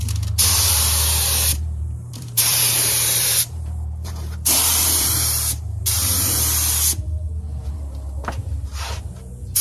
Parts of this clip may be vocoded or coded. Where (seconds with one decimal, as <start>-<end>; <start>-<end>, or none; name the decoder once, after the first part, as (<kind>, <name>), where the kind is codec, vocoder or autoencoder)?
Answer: 1.5-6.3 (vocoder, BigVGAN v2); 7.5-8.5